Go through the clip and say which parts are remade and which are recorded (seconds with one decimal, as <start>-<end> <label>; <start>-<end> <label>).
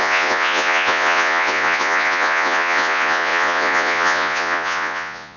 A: 0.0-5.4 remade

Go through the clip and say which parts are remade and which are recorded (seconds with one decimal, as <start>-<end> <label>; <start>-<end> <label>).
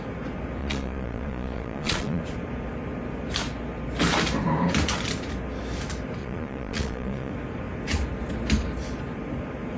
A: 0.0-0.6 recorded; 0.6-2.2 remade; 2.2-6.2 recorded; 6.2-7.3 remade; 7.3-9.8 recorded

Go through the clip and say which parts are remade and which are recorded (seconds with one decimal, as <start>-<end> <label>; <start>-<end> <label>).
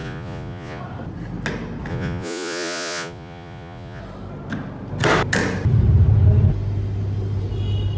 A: 0.0-0.8 remade; 0.8-1.9 recorded; 1.9-4.0 remade; 4.0-8.0 recorded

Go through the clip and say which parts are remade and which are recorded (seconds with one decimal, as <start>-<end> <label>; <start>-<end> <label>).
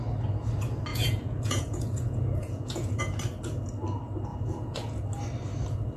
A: 0.0-0.9 recorded; 0.9-3.0 remade; 3.0-4.3 recorded; 4.3-5.0 remade; 5.0-6.0 recorded